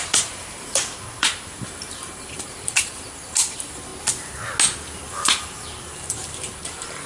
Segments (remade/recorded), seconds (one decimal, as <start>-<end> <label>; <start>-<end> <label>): 0.0-3.9 remade; 3.9-5.1 recorded; 5.1-7.1 remade